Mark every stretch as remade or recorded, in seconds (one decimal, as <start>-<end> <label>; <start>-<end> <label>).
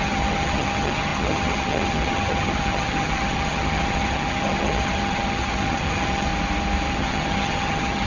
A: 0.0-6.3 remade; 6.3-6.9 recorded; 6.9-8.1 remade